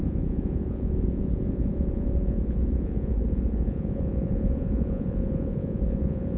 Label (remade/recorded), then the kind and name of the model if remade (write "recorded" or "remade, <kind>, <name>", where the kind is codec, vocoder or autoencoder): remade, vocoder, Vocos